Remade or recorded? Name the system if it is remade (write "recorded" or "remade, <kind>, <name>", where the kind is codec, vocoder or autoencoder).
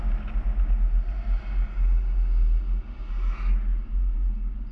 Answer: recorded